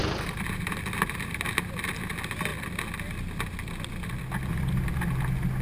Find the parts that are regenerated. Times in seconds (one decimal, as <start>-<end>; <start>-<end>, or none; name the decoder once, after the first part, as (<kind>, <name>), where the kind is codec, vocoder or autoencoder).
0.0-2.1 (vocoder, BigVGAN v2); 4.5-5.0